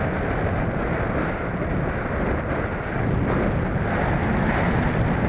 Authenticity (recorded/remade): recorded